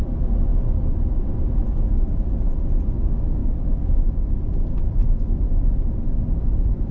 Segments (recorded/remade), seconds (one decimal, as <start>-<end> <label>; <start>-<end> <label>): 0.0-3.4 recorded; 3.4-4.2 remade; 4.2-5.0 recorded; 5.0-6.9 remade